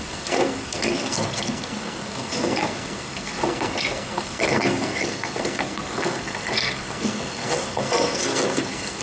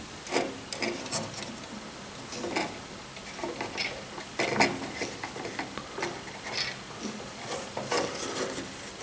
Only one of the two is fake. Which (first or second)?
first